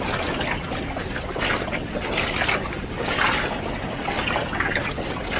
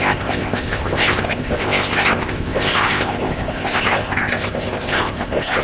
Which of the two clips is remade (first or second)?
second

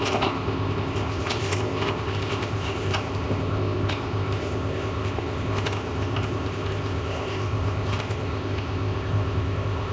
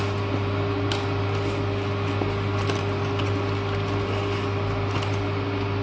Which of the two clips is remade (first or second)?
first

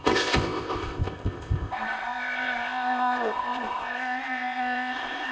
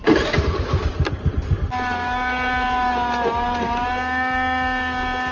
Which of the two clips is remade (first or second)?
first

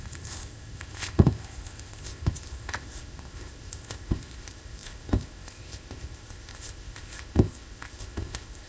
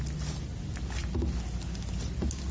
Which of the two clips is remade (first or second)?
first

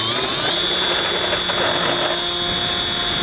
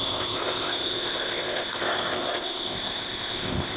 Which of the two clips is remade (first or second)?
second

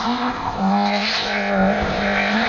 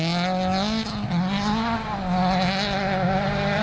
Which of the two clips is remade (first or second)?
first